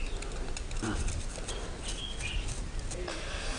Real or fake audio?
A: real